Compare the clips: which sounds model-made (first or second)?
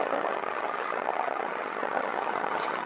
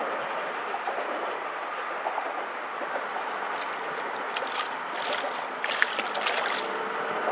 first